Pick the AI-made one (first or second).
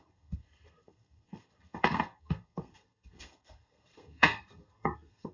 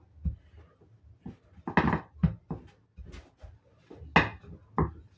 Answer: first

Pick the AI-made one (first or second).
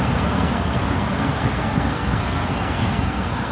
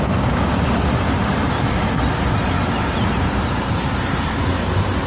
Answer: first